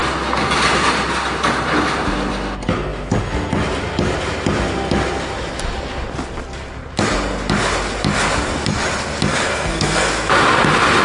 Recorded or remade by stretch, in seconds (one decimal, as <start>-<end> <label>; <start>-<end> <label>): 0.0-9.3 recorded; 9.3-10.1 remade; 10.1-11.0 recorded